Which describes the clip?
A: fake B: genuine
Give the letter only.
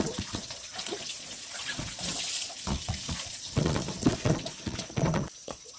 A